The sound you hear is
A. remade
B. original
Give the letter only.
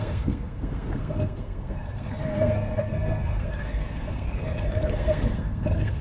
A